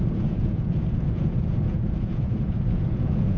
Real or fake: fake